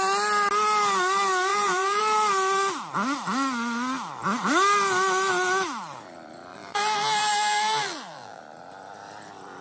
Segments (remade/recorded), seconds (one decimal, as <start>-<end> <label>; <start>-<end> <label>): 0.0-1.5 recorded; 1.5-2.0 remade; 2.0-6.5 recorded; 6.5-8.4 remade; 8.4-9.6 recorded